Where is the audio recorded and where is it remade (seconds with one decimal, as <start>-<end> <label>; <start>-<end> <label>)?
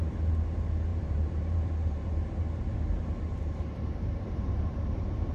0.0-0.9 recorded; 0.9-2.7 remade; 2.7-3.3 recorded; 3.3-5.3 remade